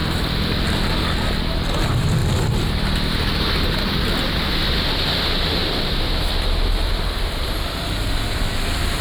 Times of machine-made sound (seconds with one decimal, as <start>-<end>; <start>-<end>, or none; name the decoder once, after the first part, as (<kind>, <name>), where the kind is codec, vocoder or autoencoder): 5.6-6.3 (vocoder, BigVGAN v2)